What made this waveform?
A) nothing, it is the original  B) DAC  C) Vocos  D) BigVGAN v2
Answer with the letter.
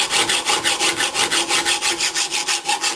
D